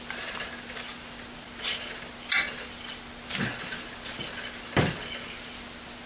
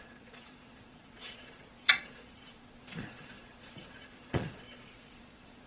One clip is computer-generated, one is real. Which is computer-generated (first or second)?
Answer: second